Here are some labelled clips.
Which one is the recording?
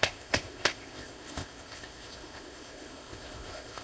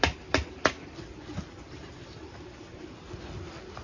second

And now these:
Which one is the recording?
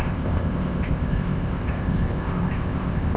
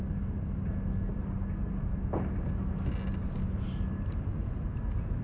second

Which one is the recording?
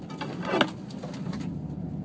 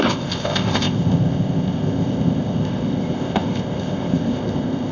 first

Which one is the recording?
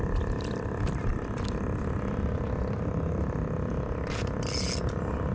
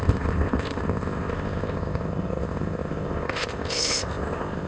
first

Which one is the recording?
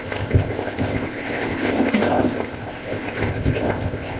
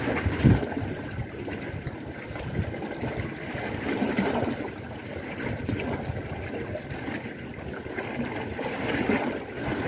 second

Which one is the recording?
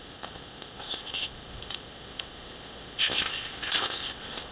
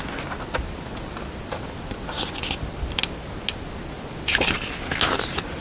second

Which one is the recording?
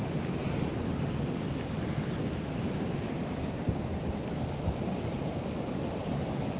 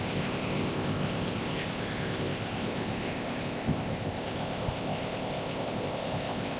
first